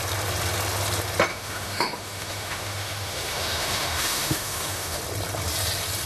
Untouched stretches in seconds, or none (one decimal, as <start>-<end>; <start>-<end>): 0.0-1.3; 5.0-6.1